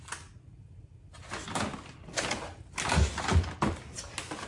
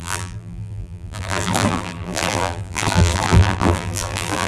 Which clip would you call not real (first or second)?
second